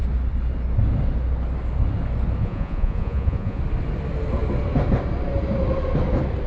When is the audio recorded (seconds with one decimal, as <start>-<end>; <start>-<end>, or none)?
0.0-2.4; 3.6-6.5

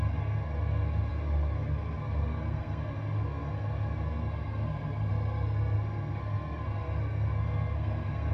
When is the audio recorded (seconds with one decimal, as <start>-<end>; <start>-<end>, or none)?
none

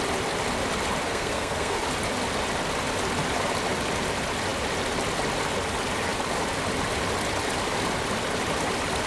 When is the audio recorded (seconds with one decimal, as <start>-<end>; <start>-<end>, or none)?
0.0-1.1; 1.8-9.1

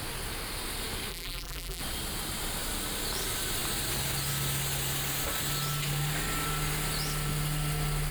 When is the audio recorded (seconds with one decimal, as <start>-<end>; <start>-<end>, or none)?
0.0-1.1; 1.8-8.1

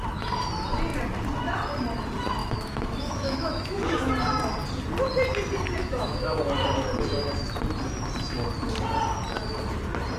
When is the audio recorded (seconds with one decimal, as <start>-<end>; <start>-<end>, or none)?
0.0-2.4; 4.1-5.8; 6.4-10.2